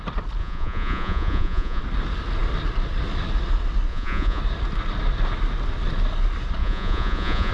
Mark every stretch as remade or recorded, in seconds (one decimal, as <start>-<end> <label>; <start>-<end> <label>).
0.0-0.4 recorded; 0.4-1.8 remade; 1.8-3.9 recorded; 3.9-4.4 remade; 4.4-6.6 recorded; 6.6-7.5 remade